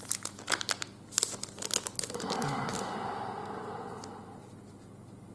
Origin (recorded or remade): recorded